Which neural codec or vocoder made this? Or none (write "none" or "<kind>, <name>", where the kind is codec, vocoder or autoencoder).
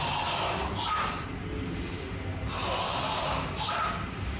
none